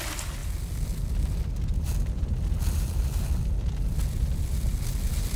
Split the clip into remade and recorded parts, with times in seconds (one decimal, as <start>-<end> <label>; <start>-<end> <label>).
0.0-5.4 recorded